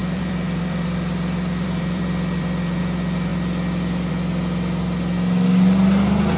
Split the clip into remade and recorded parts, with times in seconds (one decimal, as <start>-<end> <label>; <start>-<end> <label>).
0.0-2.8 remade; 2.8-6.4 recorded